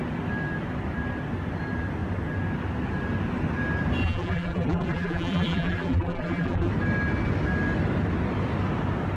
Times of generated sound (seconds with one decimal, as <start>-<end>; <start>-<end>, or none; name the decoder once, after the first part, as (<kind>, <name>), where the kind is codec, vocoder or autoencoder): 4.0-6.7 (vocoder, BigVGAN v2)